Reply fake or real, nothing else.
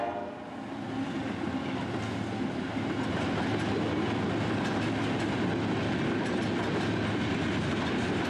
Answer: real